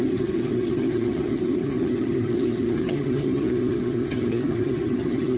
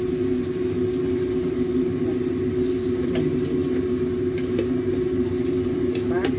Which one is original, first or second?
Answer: second